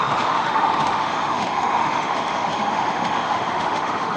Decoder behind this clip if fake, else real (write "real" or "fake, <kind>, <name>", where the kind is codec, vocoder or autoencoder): fake, autoencoder, DAC-VAE